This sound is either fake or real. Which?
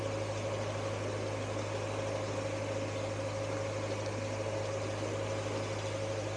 real